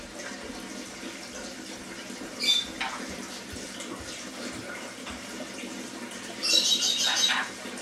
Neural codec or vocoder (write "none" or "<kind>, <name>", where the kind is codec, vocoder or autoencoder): none